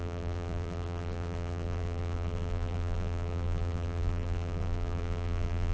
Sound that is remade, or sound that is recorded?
remade